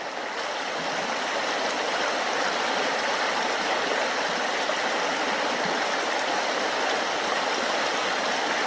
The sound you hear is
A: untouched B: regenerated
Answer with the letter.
A